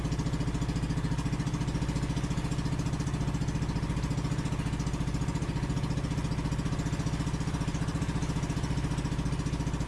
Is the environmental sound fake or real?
real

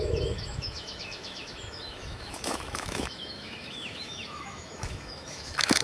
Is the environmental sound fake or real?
fake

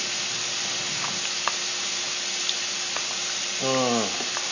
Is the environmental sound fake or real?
real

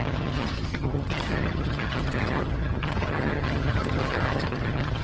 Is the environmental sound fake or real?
fake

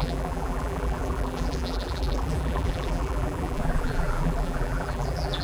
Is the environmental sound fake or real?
fake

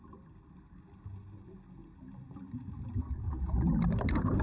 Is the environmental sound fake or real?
real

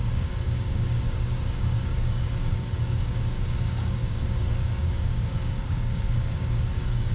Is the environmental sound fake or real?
fake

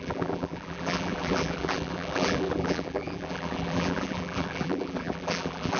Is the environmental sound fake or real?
fake